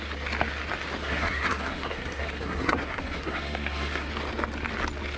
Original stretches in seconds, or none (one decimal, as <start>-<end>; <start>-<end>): 0.0-1.0; 4.1-5.2